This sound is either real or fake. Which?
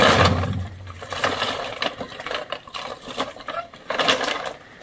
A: real